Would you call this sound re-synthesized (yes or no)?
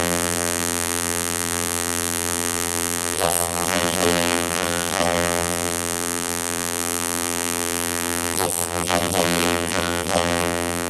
yes